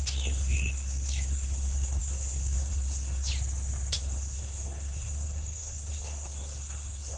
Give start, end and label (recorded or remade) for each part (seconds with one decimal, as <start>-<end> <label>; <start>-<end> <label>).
0.0-3.3 remade; 3.3-3.9 recorded; 3.9-7.2 remade